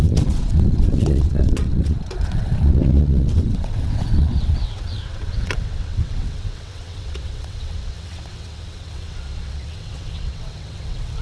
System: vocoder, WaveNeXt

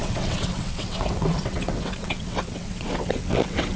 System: vocoder, WaveNeXt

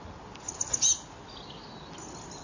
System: none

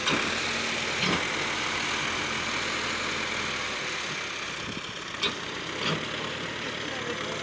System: none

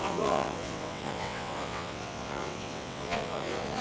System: vocoder, WaveNeXt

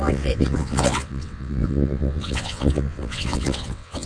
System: vocoder, WaveNeXt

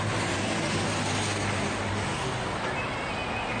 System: none